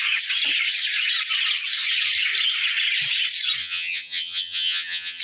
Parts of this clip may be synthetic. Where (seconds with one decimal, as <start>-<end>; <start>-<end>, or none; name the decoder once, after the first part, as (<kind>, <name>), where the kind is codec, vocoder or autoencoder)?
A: 3.6-5.2 (vocoder, HiFi-GAN)